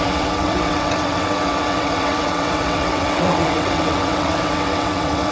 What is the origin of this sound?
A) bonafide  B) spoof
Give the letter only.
B